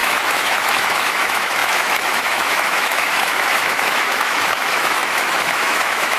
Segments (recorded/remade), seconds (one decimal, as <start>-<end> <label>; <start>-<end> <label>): 0.0-6.2 remade